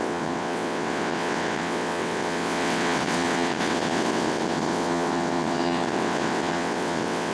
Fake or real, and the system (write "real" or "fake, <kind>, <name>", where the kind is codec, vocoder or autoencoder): fake, vocoder, WaveNeXt